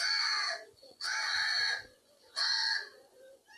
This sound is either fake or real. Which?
fake